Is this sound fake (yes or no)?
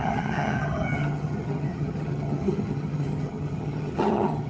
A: yes